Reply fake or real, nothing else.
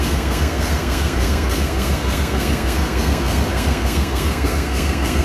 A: fake